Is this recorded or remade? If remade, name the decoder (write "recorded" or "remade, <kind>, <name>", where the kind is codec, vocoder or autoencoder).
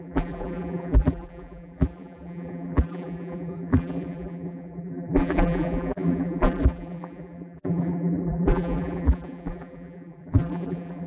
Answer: remade, vocoder, BigVGAN v2